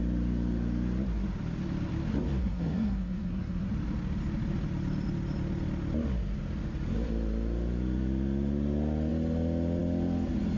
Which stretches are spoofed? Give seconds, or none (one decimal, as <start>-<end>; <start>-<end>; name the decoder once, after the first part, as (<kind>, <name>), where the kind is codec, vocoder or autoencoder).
2.4-3.7 (codec, SNAC)